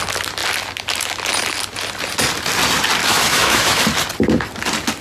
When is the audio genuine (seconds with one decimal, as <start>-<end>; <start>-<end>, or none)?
0.0-3.0; 3.8-5.0